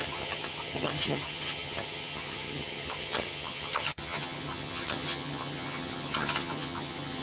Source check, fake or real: fake